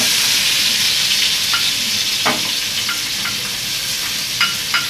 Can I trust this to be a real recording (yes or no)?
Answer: yes